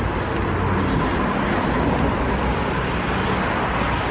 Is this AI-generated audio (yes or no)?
no